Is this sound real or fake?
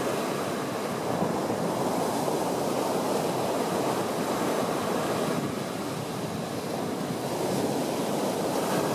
fake